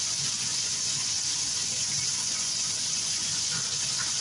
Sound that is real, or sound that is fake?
fake